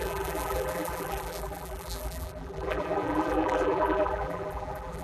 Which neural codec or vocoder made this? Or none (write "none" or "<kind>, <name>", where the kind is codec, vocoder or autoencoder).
vocoder, BigVGAN v2